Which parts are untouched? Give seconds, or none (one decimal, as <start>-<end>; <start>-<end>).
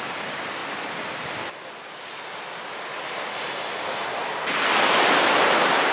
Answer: 0.0-5.9